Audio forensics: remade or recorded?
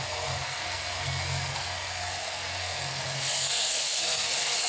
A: remade